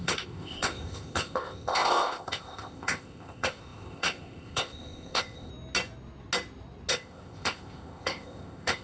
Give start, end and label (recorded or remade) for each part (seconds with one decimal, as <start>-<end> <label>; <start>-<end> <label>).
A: 0.0-5.5 remade; 5.5-6.9 recorded; 6.9-8.8 remade